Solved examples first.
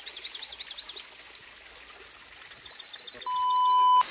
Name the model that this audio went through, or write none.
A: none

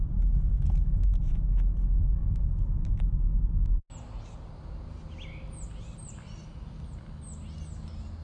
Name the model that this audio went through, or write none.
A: none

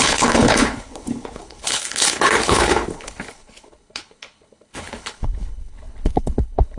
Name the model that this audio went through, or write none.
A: codec, HILCodec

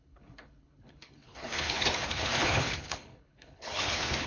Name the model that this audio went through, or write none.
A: codec, HILCodec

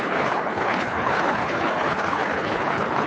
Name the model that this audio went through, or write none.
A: codec, HILCodec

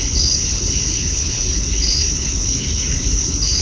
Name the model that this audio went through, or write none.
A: codec, HILCodec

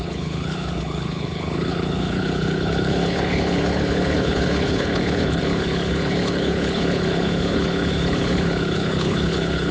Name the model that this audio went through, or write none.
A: codec, HILCodec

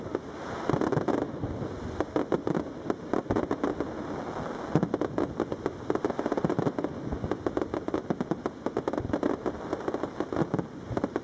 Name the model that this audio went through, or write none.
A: none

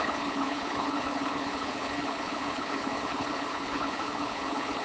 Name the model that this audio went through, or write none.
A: codec, HILCodec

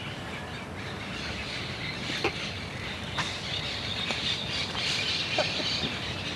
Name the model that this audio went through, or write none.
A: none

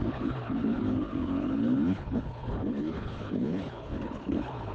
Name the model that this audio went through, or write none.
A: codec, HILCodec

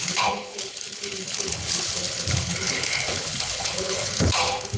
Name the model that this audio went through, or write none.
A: codec, HILCodec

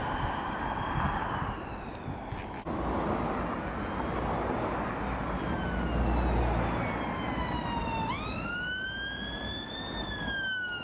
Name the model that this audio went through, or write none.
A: none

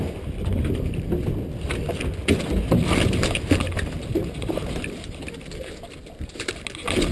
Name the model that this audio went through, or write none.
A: none